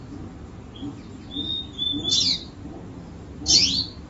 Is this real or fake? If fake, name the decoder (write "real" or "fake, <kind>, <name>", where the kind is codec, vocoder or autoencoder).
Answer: real